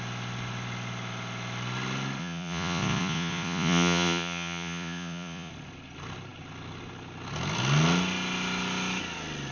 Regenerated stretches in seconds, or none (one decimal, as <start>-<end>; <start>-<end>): 2.2-5.5